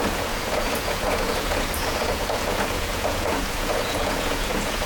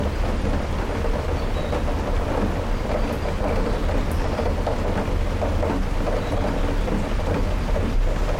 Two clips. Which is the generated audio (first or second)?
first